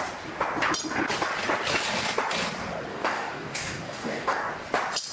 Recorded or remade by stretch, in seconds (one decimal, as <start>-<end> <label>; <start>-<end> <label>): 0.0-2.9 recorded; 2.9-4.5 remade; 4.5-5.1 recorded